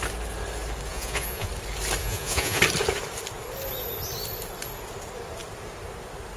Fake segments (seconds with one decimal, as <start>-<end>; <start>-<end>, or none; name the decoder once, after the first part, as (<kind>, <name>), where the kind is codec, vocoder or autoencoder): 0.9-1.5 (vocoder, Vocos); 2.0-2.6